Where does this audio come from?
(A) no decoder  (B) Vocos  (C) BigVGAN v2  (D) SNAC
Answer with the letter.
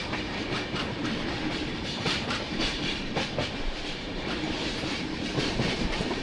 C